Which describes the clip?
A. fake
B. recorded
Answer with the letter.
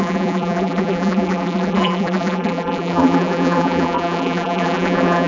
A